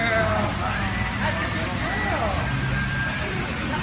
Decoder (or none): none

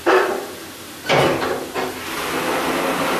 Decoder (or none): none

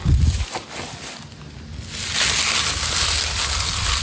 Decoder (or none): none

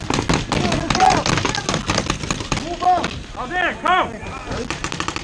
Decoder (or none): none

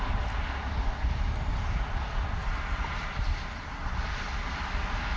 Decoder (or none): none